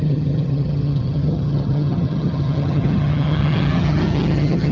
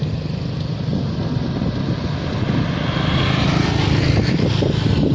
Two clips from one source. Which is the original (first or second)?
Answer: second